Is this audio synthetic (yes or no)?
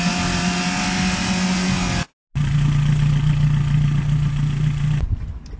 no